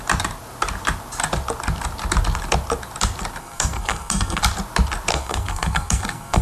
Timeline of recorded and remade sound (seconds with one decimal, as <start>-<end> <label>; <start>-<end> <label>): 0.0-3.4 recorded; 3.4-4.4 remade; 4.4-5.1 recorded; 5.1-6.4 remade